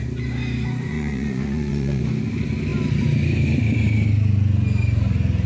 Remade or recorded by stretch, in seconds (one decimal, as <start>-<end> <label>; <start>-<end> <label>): 0.0-0.9 recorded; 0.9-2.0 remade; 2.0-5.5 recorded